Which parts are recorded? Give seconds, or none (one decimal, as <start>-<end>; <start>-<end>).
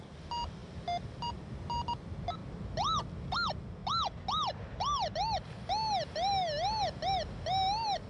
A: 0.0-8.1